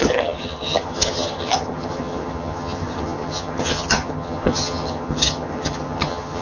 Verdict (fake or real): fake